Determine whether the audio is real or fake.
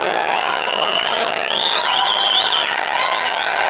fake